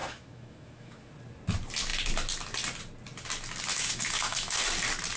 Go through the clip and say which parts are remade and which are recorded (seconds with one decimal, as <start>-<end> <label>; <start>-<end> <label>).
0.0-1.1 remade; 1.1-3.7 recorded; 3.7-4.6 remade; 4.6-5.2 recorded